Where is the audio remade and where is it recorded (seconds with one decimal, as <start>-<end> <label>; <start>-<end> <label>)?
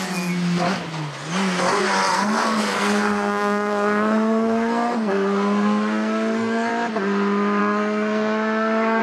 0.0-2.1 recorded; 2.1-6.7 remade; 6.7-7.6 recorded; 7.6-9.0 remade